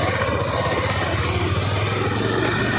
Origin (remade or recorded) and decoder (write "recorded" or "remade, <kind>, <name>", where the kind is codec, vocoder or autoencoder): recorded